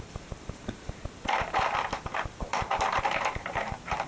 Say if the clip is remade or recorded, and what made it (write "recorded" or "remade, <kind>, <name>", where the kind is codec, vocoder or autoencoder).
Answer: remade, vocoder, BigVGAN v2